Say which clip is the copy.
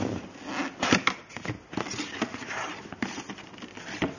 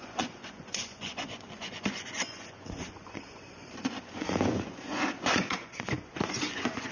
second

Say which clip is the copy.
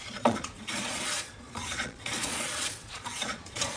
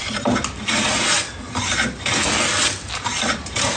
first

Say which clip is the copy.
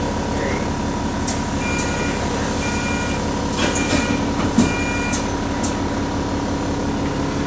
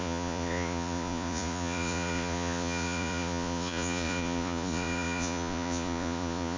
second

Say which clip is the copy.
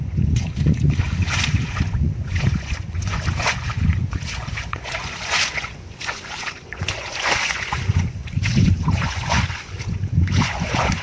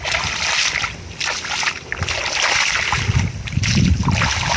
first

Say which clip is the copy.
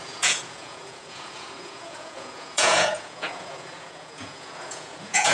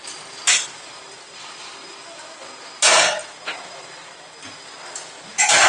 first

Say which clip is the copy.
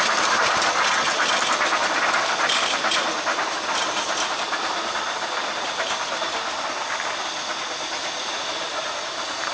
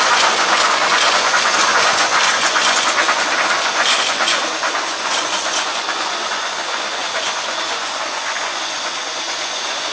second